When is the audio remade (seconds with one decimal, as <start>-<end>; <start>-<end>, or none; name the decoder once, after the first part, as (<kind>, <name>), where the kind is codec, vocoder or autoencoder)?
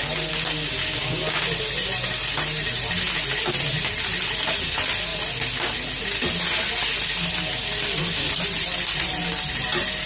0.8-1.4 (codec, DAC)